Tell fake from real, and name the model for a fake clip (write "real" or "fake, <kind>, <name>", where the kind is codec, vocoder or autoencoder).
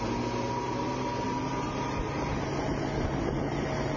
real